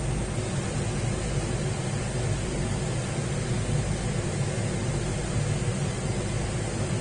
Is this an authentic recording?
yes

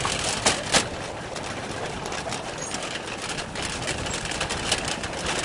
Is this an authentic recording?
yes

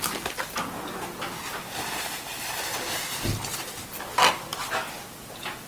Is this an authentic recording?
yes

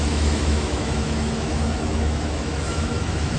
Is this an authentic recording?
no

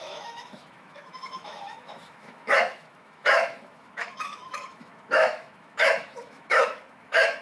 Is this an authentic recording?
no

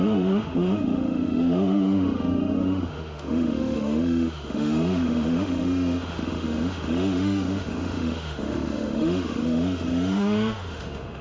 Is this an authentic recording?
no